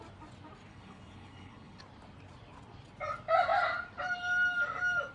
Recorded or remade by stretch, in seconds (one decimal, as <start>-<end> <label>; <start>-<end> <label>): 0.0-0.7 recorded; 0.7-1.8 remade; 1.8-5.1 recorded